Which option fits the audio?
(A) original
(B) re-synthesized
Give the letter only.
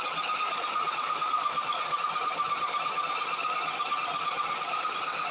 A